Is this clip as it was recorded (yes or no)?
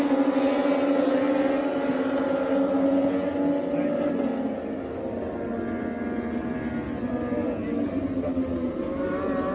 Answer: yes